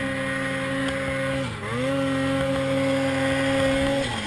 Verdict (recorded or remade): recorded